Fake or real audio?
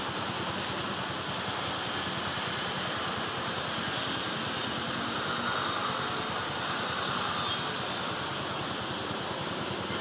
real